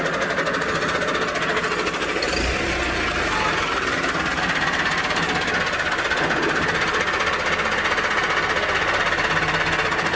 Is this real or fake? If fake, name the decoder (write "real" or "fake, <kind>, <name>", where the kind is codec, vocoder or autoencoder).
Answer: real